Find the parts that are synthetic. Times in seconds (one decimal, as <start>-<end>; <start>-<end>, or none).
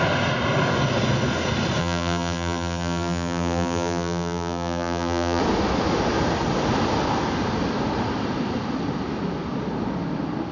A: 1.8-5.4